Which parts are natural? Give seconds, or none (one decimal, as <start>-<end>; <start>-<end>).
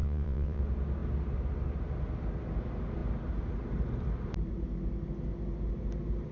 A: 0.6-6.3